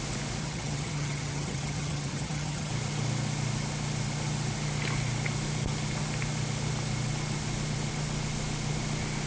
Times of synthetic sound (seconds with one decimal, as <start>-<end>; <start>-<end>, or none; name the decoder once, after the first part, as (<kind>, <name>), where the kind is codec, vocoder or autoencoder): 0.4-2.7 (vocoder, HiFi-GAN)